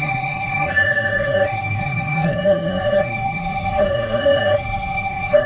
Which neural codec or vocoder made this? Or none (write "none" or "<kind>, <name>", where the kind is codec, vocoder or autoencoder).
codec, SNAC